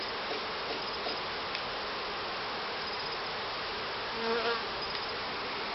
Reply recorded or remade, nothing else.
recorded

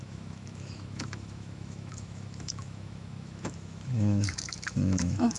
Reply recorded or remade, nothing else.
remade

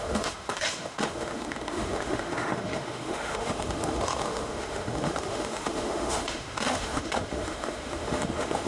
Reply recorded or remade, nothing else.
remade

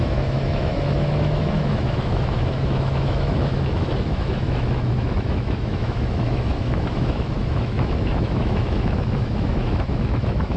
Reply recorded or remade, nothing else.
remade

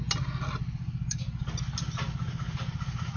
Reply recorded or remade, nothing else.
recorded